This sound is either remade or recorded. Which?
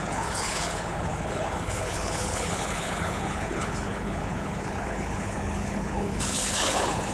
remade